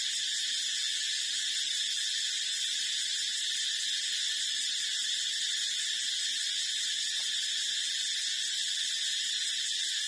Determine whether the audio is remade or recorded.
recorded